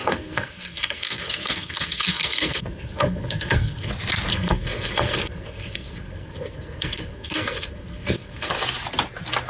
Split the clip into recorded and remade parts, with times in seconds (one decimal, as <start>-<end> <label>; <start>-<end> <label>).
0.0-3.9 remade; 3.9-4.3 recorded; 4.3-8.5 remade; 8.5-9.5 recorded